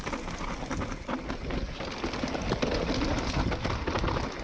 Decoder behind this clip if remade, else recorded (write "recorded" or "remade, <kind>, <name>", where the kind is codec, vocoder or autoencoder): recorded